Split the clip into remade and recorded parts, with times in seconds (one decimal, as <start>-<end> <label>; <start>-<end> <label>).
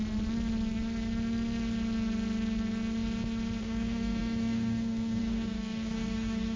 0.0-3.6 recorded; 3.6-6.6 remade